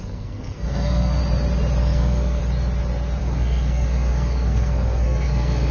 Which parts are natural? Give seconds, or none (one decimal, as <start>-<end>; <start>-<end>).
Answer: 1.2-1.8; 2.4-3.2